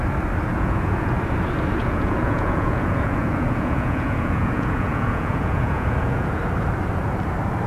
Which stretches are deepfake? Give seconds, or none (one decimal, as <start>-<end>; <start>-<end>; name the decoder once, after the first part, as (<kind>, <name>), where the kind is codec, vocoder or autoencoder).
0.5-1.1 (vocoder, Vocos); 1.8-6.4